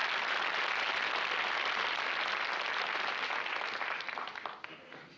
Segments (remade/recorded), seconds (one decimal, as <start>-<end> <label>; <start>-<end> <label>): 0.0-5.2 recorded